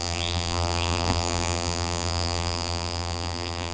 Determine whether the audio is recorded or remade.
remade